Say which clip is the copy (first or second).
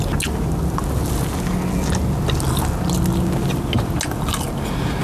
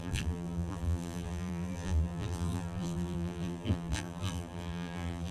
second